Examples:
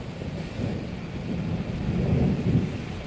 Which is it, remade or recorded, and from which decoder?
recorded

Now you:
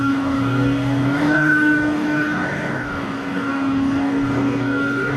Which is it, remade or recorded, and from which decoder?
remade, codec, DAC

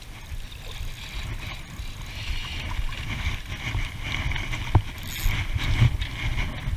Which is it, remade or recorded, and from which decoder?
recorded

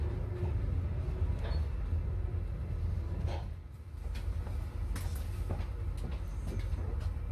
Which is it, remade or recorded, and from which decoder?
recorded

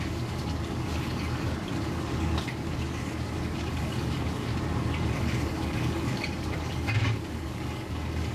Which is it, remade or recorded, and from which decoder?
remade, codec, DAC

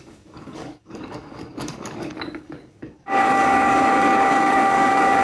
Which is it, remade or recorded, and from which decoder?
remade, codec, DAC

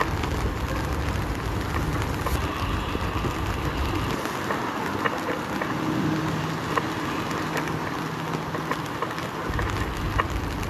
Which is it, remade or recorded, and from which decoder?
recorded